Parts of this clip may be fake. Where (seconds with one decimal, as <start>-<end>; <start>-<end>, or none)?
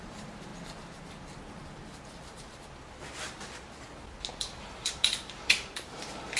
0.0-0.5; 4.3-6.4